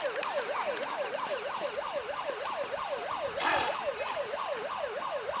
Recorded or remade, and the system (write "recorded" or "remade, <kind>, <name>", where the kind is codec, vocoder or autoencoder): recorded